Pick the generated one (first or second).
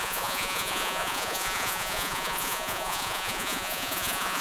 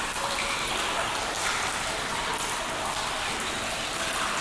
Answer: first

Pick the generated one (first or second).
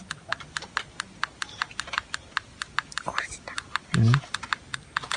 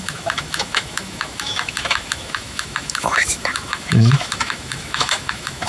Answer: second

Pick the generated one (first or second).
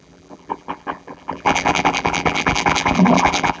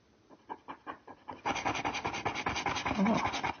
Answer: first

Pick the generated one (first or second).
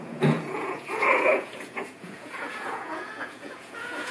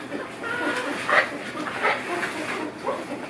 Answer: first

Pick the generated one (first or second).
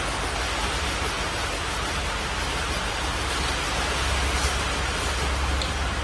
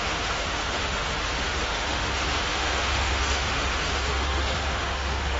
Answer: second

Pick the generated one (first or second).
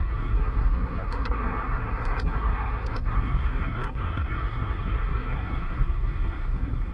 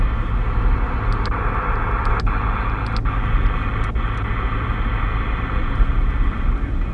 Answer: first